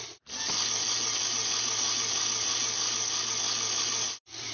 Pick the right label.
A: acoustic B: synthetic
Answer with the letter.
A